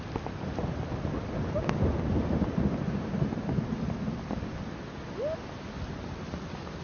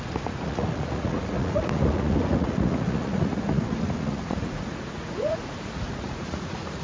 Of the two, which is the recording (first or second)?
first